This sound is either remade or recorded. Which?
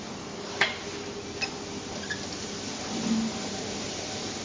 recorded